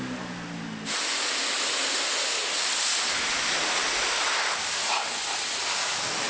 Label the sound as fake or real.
real